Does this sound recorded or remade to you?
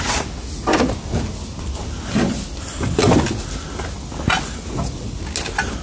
recorded